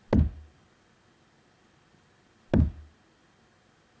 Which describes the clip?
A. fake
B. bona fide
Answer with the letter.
B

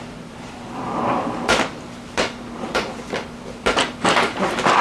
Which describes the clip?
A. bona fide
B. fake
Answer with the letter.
B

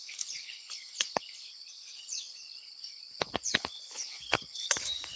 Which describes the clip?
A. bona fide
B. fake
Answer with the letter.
B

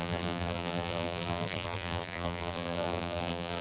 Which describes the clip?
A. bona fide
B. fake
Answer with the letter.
B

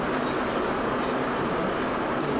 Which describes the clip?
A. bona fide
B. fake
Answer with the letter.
A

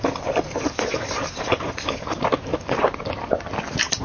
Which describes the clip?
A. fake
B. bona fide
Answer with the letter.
B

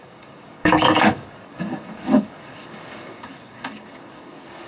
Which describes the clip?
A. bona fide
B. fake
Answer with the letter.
B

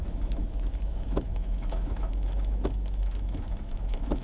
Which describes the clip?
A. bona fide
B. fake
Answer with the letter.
B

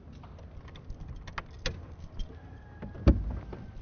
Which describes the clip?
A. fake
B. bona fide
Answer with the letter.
B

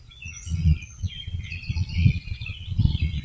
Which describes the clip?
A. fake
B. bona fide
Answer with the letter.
A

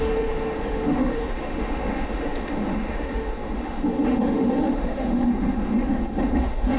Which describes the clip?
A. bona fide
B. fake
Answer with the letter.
B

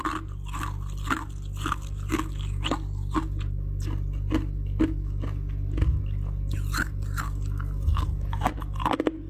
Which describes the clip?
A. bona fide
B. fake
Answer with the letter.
A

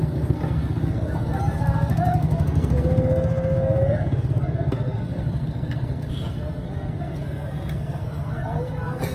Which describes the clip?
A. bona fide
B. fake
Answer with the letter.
B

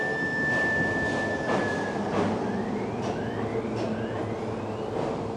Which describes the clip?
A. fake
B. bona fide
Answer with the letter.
B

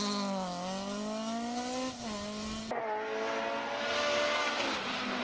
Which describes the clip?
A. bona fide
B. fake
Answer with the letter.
A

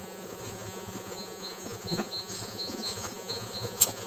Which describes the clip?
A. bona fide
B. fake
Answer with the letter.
B